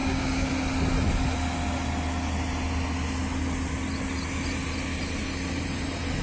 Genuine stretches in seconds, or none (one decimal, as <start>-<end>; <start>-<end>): 0.5-6.2